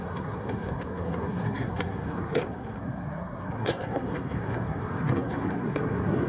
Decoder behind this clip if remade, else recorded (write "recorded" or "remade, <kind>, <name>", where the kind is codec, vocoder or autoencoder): remade, codec, SNAC